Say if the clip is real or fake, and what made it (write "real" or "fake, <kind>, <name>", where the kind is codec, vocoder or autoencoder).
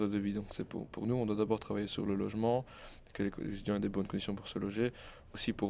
real